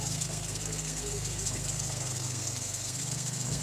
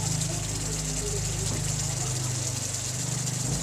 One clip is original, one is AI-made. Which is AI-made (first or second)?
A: first